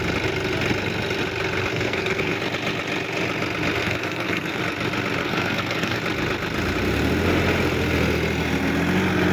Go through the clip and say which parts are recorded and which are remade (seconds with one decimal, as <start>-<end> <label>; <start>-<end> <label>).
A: 0.0-1.7 recorded; 1.7-2.4 remade; 2.4-3.8 recorded; 3.8-4.6 remade; 4.6-5.2 recorded; 5.2-6.0 remade; 6.0-9.3 recorded